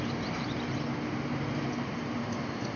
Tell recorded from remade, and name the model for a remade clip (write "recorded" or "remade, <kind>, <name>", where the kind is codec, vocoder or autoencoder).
recorded